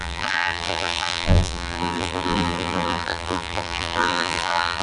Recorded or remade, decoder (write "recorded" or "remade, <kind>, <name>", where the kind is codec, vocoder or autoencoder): remade, vocoder, BigVGAN v2